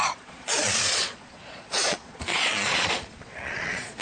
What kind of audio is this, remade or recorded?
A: remade